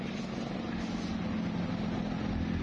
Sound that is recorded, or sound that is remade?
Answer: recorded